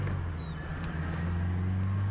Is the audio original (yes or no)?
yes